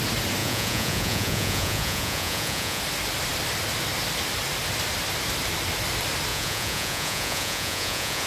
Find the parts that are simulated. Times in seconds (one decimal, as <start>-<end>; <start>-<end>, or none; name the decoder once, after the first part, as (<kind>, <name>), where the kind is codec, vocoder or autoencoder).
0.4-2.8 (vocoder, Vocos); 6.3-8.3